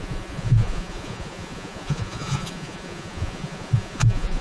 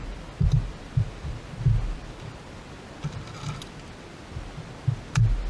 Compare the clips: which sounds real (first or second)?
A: second